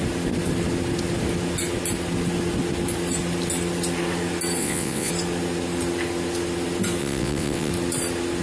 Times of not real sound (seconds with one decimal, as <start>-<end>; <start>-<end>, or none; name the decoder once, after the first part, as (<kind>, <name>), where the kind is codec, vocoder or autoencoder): 4.6-5.1 (vocoder, WaveNeXt); 7.0-7.7